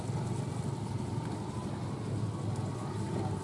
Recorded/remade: recorded